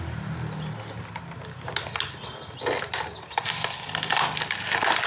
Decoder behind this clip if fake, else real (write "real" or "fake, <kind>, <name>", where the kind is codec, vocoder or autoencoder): real